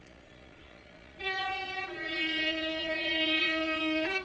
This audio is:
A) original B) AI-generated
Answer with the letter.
B